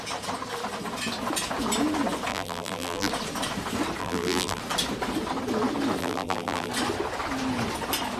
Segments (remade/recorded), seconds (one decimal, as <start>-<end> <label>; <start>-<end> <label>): 0.0-2.3 recorded; 2.3-3.1 remade; 3.1-4.0 recorded; 4.0-4.6 remade; 4.6-6.0 recorded; 6.0-6.7 remade; 6.7-8.2 recorded